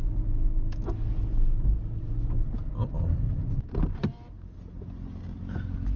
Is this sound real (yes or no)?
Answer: yes